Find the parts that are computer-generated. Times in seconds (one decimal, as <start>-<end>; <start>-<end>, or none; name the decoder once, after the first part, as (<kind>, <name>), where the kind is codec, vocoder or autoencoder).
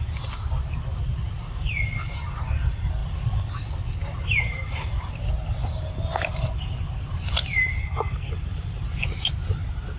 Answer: 7.8-8.3 (codec, SNAC)